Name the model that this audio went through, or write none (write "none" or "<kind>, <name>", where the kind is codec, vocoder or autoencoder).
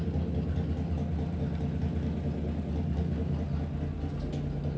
none